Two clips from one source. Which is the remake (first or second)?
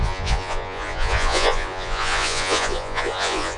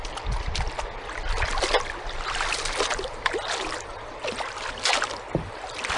first